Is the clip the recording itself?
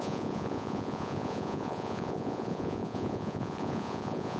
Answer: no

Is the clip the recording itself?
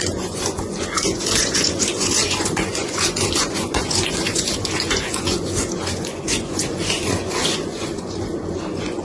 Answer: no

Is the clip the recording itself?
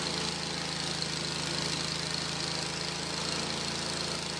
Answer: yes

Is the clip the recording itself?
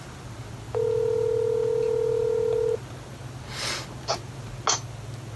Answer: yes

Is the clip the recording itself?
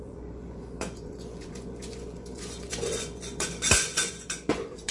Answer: no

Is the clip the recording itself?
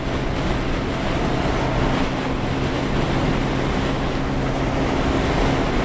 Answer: yes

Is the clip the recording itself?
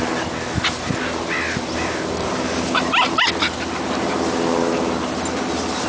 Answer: yes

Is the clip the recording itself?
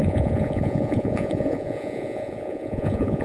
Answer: no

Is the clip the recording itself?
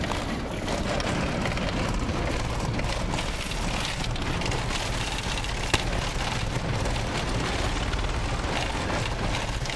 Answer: yes